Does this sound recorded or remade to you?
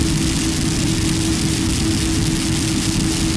recorded